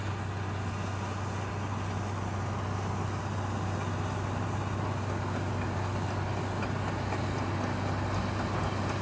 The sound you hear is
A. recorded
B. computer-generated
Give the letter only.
A